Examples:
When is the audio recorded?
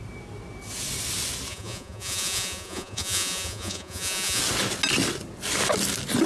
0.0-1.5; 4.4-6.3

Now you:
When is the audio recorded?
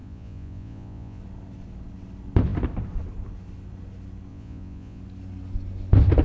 1.2-4.3; 5.0-6.2